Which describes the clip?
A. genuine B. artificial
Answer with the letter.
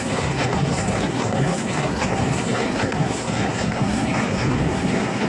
B